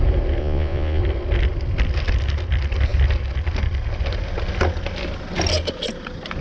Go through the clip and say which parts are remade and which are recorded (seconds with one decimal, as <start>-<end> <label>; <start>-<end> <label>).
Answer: 0.0-0.4 recorded; 0.4-1.0 remade; 1.0-6.4 recorded